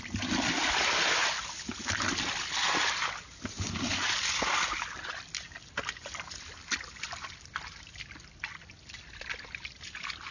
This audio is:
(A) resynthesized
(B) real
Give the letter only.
B